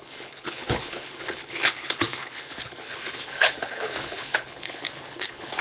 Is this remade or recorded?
remade